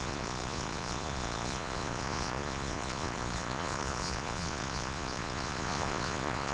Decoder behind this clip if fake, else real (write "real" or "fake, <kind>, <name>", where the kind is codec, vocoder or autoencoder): fake, vocoder, Vocos